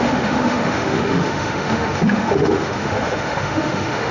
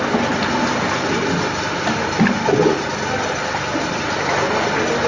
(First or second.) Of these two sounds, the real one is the second